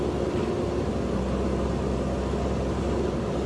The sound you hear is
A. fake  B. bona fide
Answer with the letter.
B